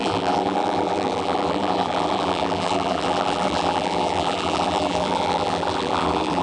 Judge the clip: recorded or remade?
remade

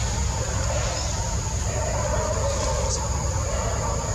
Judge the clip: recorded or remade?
recorded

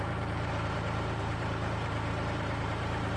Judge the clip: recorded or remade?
remade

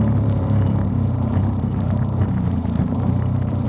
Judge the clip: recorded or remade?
remade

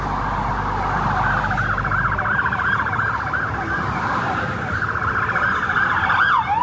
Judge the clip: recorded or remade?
recorded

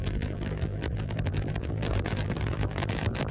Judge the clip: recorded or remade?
remade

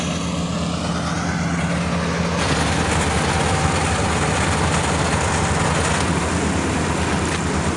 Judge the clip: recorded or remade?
recorded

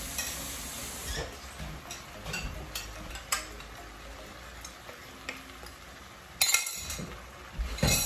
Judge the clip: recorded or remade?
recorded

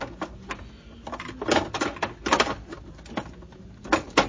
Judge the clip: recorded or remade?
recorded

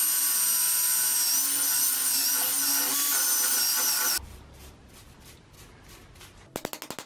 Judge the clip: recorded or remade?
recorded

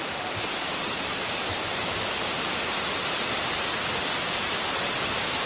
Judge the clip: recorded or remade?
remade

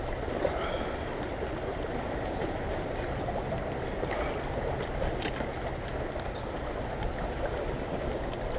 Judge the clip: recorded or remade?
recorded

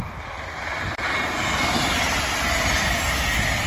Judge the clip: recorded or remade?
recorded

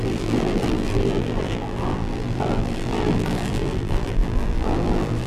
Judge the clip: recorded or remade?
remade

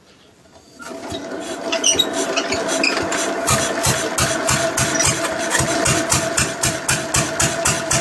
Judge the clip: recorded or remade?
recorded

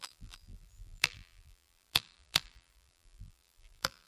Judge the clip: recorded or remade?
remade